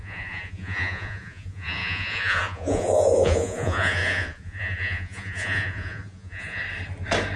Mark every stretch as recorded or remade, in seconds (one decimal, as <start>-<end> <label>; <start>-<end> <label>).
0.0-6.6 remade; 6.6-7.4 recorded